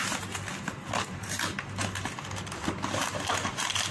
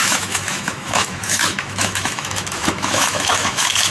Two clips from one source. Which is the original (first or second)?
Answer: first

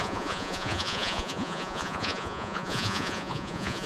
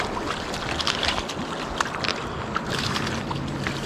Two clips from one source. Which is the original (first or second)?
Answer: second